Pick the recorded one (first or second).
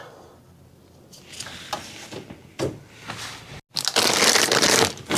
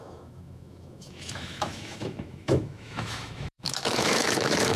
first